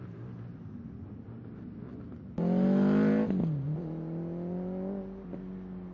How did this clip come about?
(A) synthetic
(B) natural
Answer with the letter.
B